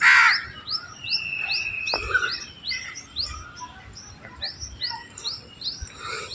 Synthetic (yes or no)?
no